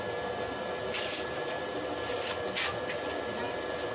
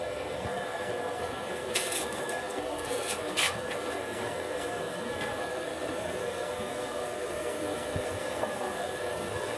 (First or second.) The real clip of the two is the first